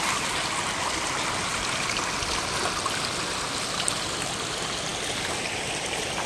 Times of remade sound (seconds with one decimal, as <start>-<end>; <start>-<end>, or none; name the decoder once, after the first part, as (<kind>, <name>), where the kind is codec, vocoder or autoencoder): none